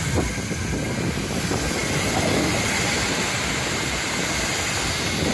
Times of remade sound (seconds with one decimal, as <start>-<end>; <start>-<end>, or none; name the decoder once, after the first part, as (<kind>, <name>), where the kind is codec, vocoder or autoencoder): none